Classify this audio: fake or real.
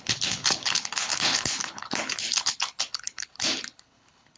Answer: fake